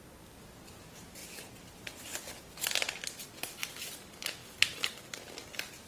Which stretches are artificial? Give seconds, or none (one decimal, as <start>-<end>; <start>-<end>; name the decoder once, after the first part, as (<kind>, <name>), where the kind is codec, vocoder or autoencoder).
none